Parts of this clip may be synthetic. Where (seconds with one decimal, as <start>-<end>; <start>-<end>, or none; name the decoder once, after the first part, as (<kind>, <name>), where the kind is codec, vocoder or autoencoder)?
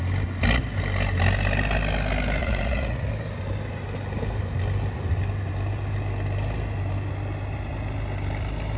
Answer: 2.4-3.1 (vocoder, Vocos)